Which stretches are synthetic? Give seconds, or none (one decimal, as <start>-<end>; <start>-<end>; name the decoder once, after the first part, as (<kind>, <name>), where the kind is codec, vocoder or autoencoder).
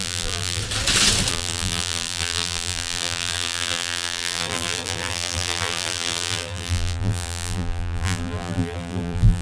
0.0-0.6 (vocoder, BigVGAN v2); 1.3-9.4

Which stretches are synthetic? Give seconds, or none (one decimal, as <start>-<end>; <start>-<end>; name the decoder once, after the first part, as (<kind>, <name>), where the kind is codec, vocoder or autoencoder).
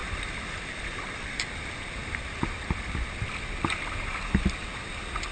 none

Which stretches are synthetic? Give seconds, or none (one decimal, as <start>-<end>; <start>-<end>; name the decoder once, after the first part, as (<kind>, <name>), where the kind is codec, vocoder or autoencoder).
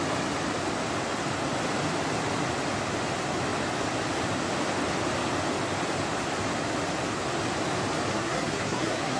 8.1-9.2 (codec, SNAC)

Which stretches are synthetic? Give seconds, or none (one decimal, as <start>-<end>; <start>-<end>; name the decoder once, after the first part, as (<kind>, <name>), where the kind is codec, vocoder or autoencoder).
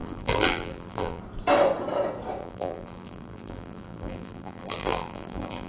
0.0-1.2 (vocoder, BigVGAN v2); 2.4-5.7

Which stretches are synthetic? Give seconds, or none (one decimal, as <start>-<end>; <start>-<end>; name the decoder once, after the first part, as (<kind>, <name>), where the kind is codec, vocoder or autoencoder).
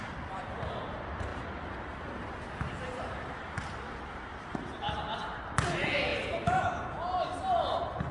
none